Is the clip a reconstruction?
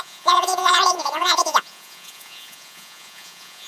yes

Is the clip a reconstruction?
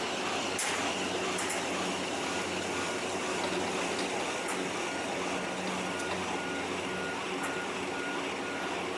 no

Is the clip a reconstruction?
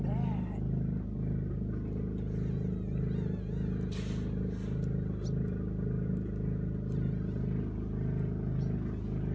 no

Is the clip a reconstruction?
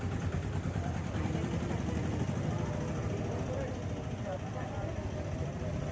yes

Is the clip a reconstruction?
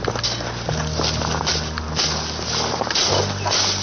no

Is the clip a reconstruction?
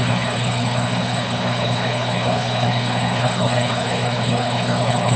yes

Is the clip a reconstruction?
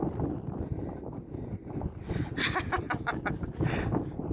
no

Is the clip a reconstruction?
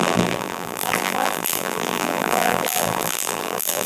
yes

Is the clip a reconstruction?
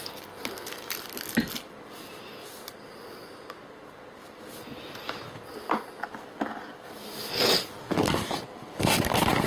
no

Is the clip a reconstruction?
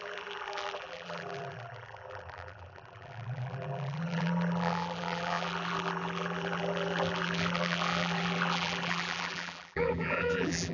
yes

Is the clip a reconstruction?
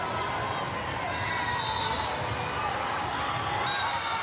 no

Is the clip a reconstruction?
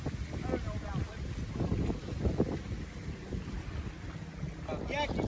no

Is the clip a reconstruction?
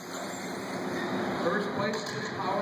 no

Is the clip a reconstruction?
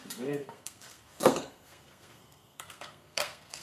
yes